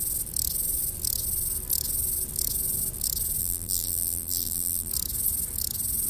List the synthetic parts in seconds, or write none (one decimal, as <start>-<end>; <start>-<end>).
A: 3.4-4.9

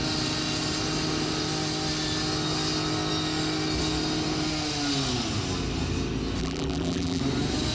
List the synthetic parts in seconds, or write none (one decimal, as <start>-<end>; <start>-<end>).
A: 6.4-7.2

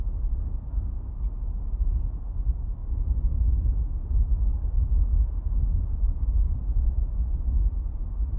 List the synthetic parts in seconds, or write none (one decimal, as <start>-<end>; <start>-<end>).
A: none

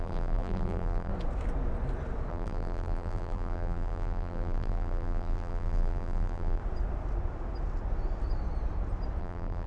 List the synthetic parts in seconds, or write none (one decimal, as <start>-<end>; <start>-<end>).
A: 0.0-1.1; 2.3-6.6; 9.2-9.7

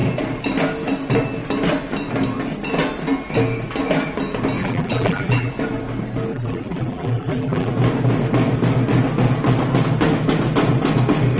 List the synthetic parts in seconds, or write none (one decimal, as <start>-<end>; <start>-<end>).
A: 4.6-5.5; 6.3-7.7

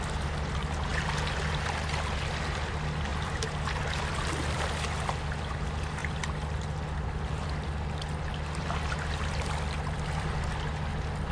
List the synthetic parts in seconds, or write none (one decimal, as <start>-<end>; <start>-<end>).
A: none

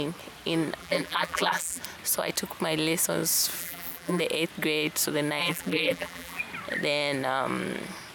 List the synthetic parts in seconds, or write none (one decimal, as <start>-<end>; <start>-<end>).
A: 0.8-1.8; 3.6-4.2; 5.4-6.4